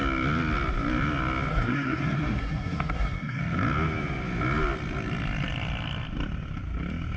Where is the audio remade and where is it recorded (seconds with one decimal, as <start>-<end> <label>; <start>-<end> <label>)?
0.0-1.5 recorded; 1.5-3.4 remade; 3.4-7.2 recorded